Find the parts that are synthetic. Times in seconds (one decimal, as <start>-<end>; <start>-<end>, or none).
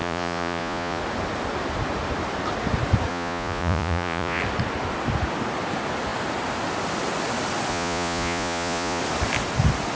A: 0.0-1.0; 3.1-4.4; 7.7-9.0